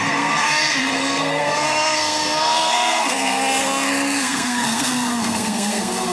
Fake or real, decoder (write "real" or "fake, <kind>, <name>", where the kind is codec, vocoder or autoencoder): fake, codec, SNAC